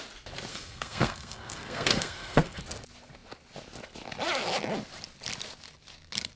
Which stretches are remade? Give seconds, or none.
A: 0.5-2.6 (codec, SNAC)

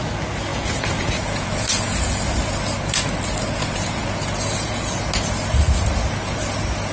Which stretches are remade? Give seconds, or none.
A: 0.5-2.1 (vocoder, Vocos); 3.6-5.0

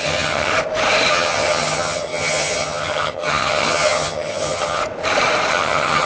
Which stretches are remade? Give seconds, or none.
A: 0.0-0.5 (vocoder, HiFi-GAN); 1.1-4.8; 5.5-6.1

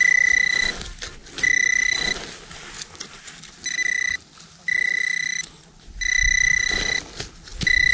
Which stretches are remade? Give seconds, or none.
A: none

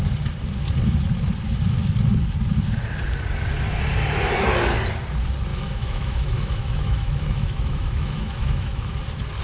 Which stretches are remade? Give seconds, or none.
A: 5.5-8.9 (autoencoder, DAC-VAE)

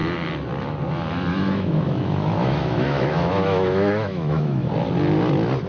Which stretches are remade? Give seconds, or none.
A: 1.3-4.7 (autoencoder, DAC-VAE)

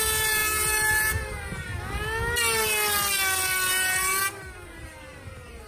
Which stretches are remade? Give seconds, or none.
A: 0.0-1.7 (vocoder, BigVGAN v2); 3.7-5.7

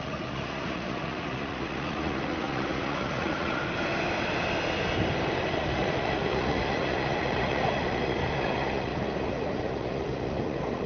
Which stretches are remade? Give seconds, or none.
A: 0.0-3.6 (vocoder, Vocos); 5.6-10.9